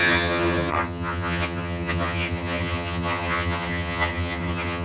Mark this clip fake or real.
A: fake